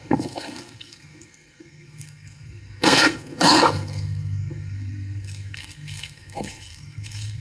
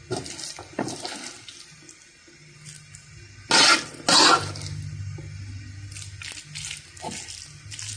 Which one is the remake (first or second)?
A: first